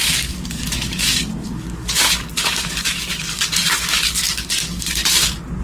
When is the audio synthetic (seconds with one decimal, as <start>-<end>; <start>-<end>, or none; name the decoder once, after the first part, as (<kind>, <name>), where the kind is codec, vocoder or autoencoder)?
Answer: 0.0-5.0 (codec, DAC)